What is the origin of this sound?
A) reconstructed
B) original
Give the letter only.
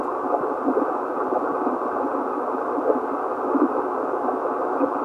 B